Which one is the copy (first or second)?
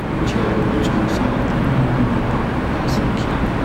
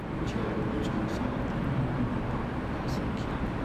second